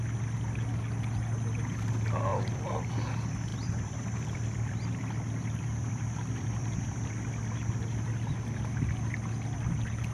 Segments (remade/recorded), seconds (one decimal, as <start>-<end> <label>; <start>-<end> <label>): 0.0-2.3 recorded; 2.3-2.9 remade; 2.9-3.5 recorded; 3.5-7.1 remade; 7.1-10.1 recorded

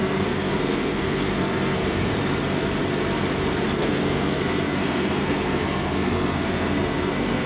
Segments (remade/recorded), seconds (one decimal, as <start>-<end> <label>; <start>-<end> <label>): 0.0-2.1 remade; 2.1-3.6 recorded; 3.6-7.5 remade

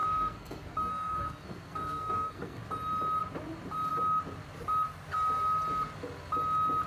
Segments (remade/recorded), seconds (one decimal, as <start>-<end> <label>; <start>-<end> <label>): 0.0-2.6 remade; 2.6-6.9 recorded

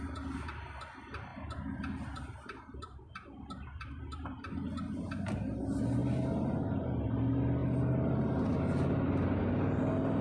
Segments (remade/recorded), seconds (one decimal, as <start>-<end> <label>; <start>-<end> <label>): 0.0-10.2 recorded

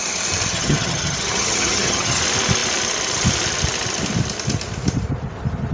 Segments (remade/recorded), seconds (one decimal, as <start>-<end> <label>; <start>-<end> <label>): 0.0-0.5 recorded; 0.5-2.2 remade; 2.2-5.7 recorded

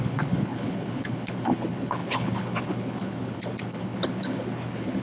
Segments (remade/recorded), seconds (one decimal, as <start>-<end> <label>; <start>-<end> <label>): 0.0-5.0 remade

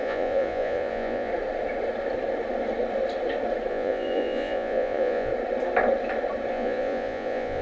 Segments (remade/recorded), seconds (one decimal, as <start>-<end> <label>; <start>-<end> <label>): 0.0-1.3 remade; 1.3-3.7 recorded; 3.7-5.3 remade; 5.3-6.5 recorded; 6.5-7.6 remade

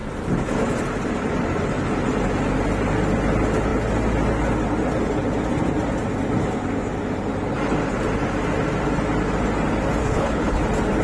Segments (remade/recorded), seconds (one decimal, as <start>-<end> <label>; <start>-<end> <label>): 0.0-10.0 recorded; 10.0-10.6 remade; 10.6-11.0 recorded